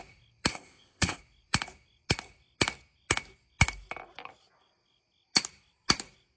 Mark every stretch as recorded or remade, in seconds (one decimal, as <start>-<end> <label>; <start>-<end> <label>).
0.0-0.5 recorded; 0.5-1.2 remade; 1.2-6.4 recorded